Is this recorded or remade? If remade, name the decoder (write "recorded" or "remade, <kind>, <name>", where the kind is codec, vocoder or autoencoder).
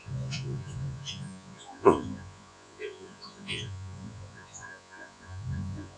remade, vocoder, Vocos